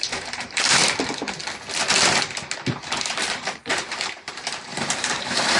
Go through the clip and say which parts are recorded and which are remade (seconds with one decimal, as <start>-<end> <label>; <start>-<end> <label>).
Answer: 0.0-0.8 remade; 0.8-3.0 recorded; 3.0-5.6 remade